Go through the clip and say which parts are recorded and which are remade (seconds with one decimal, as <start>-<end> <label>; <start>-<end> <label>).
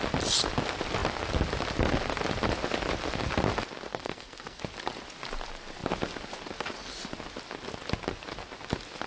0.0-3.9 recorded; 3.9-4.6 remade; 4.6-9.1 recorded